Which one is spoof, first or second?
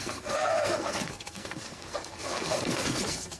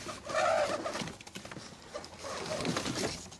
first